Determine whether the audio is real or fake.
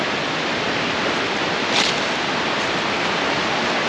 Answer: real